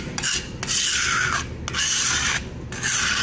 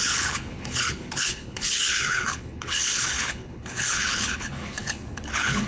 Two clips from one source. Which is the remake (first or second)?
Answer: second